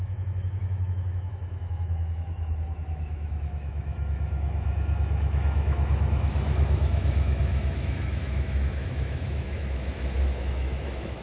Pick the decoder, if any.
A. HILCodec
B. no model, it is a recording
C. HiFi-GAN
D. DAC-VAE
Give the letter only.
D